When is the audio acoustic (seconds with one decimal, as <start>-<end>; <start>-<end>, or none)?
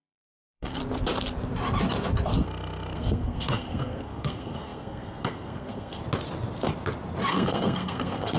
0.8-2.4; 6.0-7.3